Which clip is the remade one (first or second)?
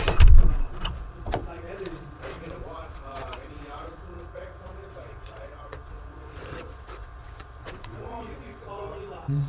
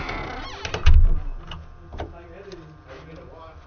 first